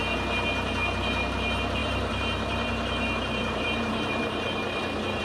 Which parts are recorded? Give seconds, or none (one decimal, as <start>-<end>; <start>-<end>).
0.0-1.8